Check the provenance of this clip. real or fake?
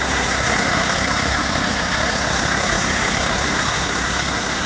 fake